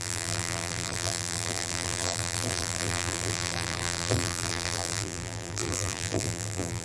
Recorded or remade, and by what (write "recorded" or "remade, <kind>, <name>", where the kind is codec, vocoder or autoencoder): remade, vocoder, BigVGAN v2